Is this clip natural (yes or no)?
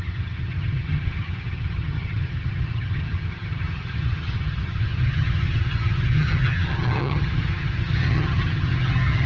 no